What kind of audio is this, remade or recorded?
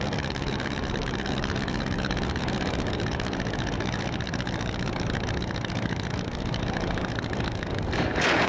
remade